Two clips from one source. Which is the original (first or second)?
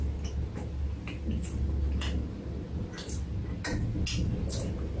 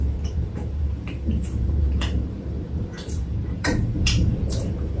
first